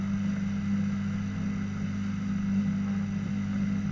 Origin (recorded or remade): recorded